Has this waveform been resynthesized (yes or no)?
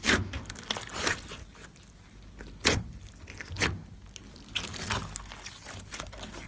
no